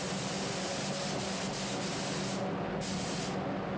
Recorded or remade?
recorded